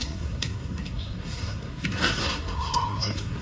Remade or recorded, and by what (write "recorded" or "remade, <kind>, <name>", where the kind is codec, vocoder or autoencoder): remade, codec, SNAC